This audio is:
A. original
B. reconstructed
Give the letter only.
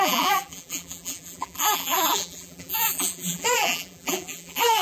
B